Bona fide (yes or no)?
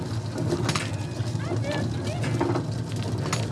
yes